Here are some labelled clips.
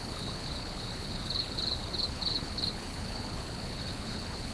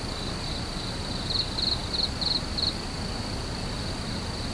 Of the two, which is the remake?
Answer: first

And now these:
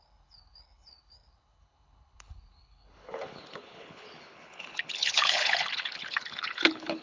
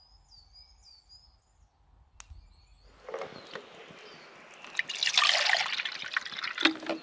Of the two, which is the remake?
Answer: first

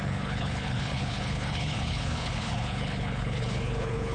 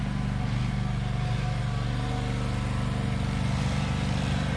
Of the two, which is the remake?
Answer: first